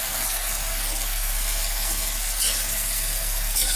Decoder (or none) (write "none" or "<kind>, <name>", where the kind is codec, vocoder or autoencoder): codec, SNAC